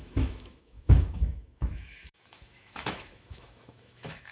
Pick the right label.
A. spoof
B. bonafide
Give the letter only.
A